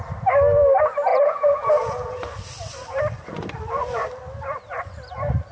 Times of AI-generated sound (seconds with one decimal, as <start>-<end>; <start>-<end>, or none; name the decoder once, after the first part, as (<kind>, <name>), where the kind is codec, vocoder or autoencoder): 1.1-2.2 (vocoder, Vocos)